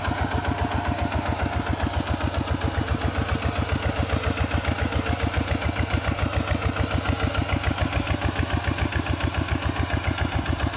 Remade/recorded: recorded